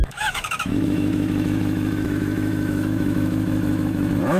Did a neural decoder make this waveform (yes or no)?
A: yes